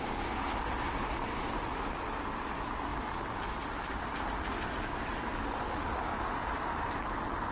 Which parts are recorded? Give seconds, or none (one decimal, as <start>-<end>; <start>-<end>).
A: 0.0-7.5